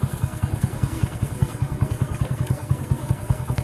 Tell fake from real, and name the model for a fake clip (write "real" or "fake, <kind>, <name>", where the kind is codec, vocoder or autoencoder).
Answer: fake, codec, SNAC